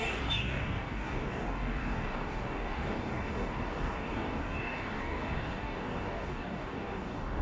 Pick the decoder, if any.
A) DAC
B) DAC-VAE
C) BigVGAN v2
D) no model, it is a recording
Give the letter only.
A